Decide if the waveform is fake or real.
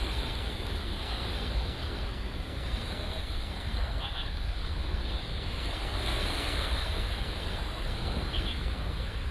fake